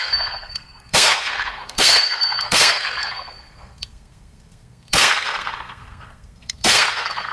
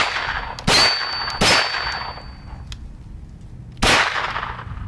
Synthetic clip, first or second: first